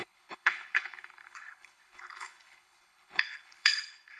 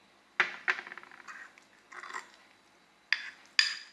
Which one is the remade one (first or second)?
first